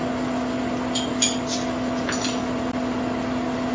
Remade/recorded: recorded